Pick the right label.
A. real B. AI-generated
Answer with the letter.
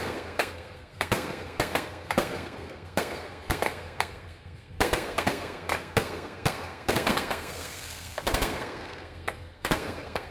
B